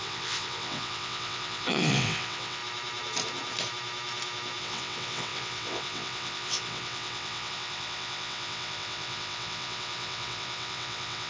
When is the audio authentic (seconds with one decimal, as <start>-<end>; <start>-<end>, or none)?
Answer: 2.6-4.6